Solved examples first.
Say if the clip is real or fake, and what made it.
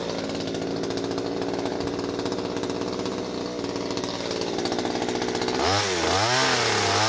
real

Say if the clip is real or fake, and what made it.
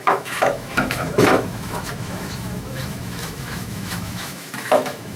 fake, autoencoder, DAC-VAE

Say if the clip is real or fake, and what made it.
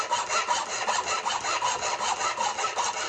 real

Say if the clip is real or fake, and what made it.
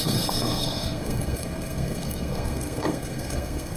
fake, codec, SNAC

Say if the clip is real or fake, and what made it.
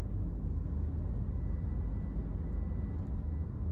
real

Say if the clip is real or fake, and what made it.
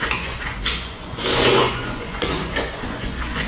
fake, vocoder, Vocos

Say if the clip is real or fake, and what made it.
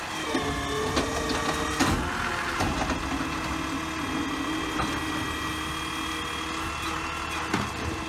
real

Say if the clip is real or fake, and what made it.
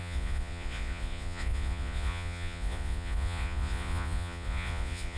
fake, vocoder, Vocos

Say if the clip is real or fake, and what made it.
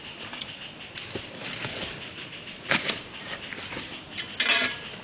real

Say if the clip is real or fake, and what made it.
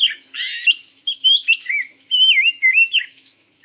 fake, autoencoder, DAC-VAE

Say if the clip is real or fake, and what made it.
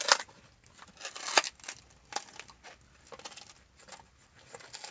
real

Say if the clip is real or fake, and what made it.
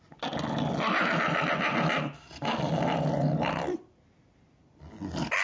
real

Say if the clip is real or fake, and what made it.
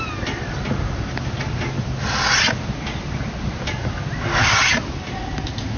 real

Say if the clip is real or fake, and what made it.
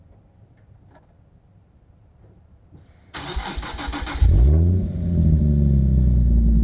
real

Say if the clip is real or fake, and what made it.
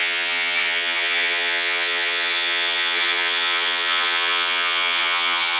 fake, vocoder, HiFi-GAN